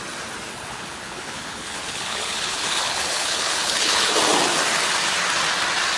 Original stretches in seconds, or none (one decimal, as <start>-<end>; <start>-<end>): 0.0-0.5; 4.1-6.0